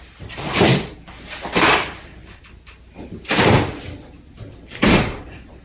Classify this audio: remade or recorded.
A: remade